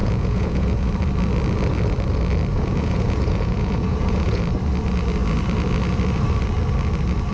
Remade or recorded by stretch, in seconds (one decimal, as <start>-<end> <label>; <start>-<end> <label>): 0.0-0.9 remade; 0.9-2.5 recorded; 2.5-4.4 remade; 4.4-7.3 recorded